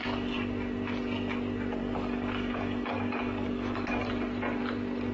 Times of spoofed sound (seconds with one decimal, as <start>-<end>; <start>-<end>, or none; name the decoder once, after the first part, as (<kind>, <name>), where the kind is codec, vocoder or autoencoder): 1.8-4.0 (codec, DAC)